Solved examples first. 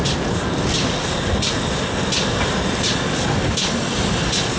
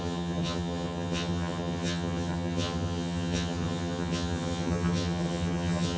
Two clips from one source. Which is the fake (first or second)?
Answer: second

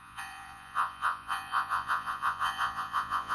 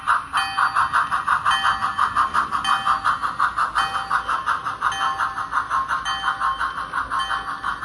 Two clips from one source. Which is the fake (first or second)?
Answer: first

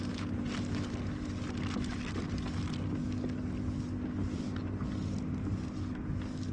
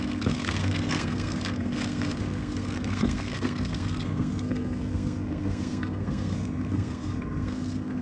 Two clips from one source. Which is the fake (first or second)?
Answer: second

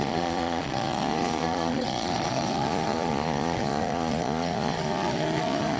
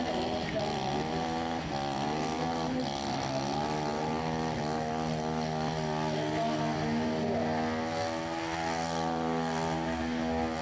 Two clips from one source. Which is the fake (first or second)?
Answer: first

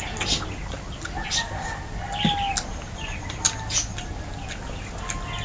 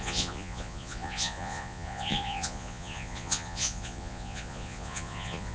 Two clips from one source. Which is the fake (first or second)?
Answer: second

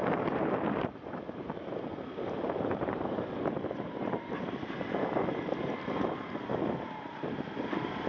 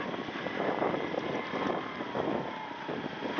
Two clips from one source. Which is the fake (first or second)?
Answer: first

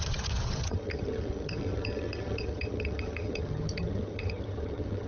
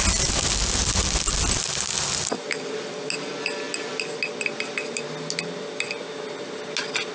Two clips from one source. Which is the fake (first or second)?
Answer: first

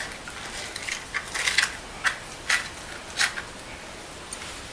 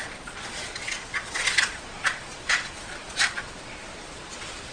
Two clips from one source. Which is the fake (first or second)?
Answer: second